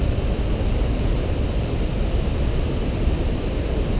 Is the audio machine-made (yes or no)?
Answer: no